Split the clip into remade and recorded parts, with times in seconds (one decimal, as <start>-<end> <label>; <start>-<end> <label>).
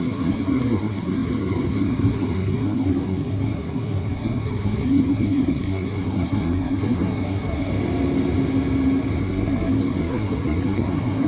0.0-7.7 remade; 7.7-9.2 recorded; 9.2-11.3 remade